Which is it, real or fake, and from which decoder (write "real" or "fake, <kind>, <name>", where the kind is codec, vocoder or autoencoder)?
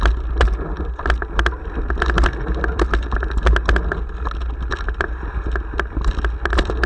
real